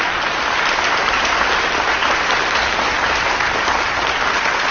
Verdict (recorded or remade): recorded